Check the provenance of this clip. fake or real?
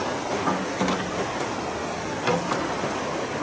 real